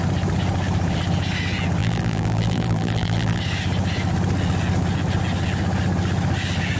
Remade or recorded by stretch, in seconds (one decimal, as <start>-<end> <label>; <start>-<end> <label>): 0.0-1.8 recorded; 1.8-3.4 remade; 3.4-6.8 recorded